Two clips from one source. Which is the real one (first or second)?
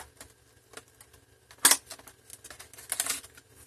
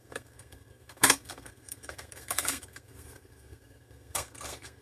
first